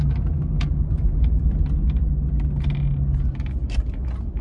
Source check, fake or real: real